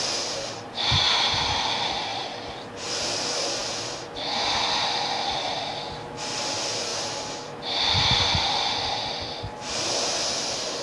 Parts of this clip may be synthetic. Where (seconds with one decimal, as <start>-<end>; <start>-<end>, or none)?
none

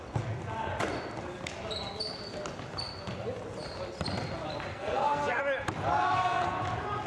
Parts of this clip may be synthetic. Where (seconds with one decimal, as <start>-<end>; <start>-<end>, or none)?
4.7-5.4; 6.0-6.6

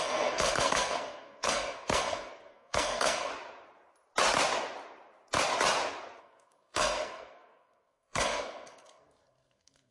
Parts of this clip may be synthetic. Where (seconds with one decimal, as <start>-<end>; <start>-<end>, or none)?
0.0-3.3; 6.2-9.9

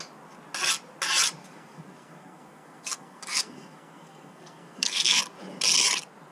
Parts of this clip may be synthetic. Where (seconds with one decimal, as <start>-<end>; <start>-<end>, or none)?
1.4-5.2

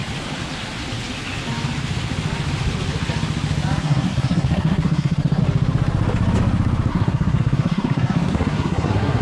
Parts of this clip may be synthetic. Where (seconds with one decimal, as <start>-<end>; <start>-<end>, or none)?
3.8-5.4; 6.9-9.2

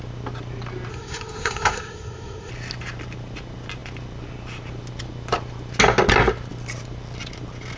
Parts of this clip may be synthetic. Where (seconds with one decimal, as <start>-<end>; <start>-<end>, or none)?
0.9-2.5

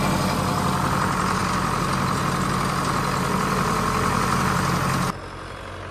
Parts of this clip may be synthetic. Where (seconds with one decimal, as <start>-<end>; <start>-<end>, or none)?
none

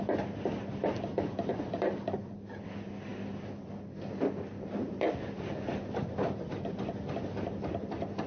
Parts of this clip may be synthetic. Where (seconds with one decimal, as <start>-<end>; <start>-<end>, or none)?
none